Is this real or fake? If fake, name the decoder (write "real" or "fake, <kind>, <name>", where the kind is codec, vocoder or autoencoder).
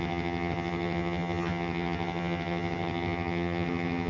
fake, vocoder, HiFi-GAN